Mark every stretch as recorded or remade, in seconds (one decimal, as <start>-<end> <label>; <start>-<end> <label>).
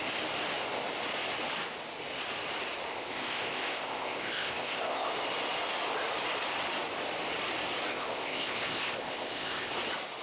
0.0-2.9 recorded; 2.9-5.1 remade; 5.1-7.9 recorded; 7.9-9.7 remade; 9.7-10.2 recorded